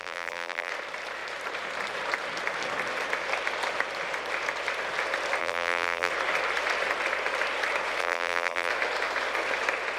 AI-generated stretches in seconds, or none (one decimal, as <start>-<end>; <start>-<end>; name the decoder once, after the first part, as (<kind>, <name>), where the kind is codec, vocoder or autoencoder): 0.0-0.7 (vocoder, BigVGAN v2); 5.4-6.1; 8.0-8.7